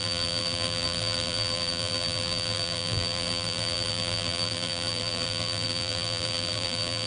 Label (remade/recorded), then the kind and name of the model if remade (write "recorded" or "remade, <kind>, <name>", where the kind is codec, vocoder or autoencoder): remade, vocoder, BigVGAN v2